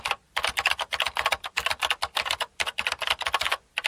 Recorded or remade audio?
remade